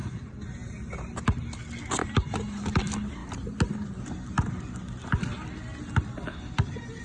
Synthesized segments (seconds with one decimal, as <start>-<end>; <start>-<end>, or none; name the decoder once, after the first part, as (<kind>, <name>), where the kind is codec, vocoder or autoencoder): 0.0-0.9 (vocoder, BigVGAN v2); 2.0-2.6

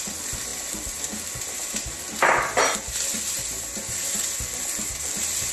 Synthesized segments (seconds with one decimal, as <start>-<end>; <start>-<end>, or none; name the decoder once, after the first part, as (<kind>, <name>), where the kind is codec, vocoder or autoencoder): 0.0-0.5 (vocoder, BigVGAN v2); 1.2-5.5

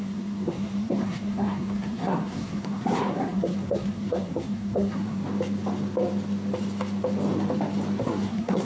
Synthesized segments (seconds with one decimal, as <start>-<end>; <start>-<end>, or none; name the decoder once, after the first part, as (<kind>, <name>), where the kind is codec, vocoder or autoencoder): 0.0-5.2 (codec, SNAC); 8.0-8.6